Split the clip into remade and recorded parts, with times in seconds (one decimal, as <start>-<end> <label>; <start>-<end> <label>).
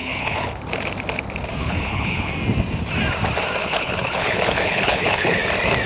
0.0-0.6 remade; 0.6-1.6 recorded; 1.6-2.3 remade; 2.3-3.6 recorded; 3.6-5.4 remade; 5.4-5.9 recorded